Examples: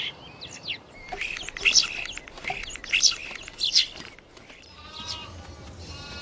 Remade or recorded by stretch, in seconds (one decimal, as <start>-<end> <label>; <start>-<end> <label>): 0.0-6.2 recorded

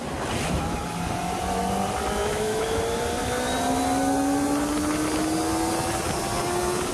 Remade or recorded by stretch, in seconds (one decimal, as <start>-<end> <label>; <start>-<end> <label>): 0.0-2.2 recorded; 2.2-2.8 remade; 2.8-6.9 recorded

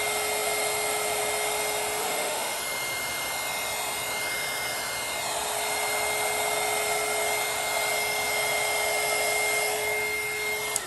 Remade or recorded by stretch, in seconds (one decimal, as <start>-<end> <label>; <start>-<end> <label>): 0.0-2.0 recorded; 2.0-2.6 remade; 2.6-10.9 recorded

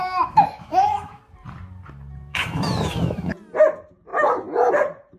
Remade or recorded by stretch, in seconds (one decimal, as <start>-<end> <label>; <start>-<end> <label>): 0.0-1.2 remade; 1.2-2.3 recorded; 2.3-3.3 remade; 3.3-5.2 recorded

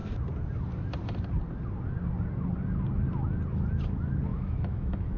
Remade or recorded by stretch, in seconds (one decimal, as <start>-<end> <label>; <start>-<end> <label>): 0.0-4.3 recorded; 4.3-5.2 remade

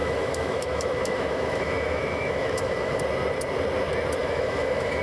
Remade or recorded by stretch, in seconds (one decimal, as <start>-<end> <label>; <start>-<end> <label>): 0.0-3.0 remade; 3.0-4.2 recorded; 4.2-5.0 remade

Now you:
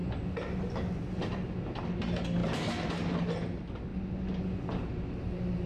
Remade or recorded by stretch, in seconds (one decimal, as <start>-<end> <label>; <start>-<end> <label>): 0.0-5.7 recorded